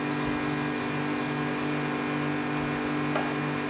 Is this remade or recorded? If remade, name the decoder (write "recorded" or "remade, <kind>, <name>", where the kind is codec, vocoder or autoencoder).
recorded